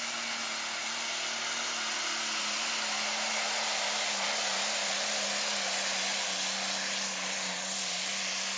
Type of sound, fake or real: real